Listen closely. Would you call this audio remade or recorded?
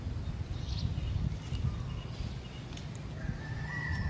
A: recorded